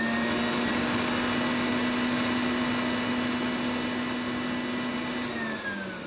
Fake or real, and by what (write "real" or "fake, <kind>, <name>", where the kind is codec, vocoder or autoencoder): real